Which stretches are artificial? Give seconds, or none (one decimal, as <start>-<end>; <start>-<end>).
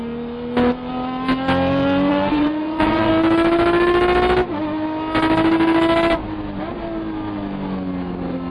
2.1-3.1